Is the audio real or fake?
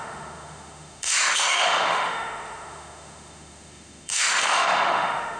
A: fake